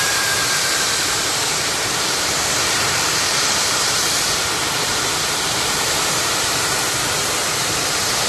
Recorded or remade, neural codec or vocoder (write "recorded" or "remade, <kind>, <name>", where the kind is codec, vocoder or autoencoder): remade, vocoder, BigVGAN v2